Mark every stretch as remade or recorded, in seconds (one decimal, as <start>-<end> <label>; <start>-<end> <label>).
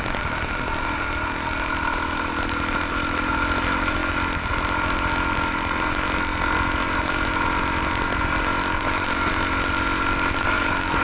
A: 0.0-11.0 recorded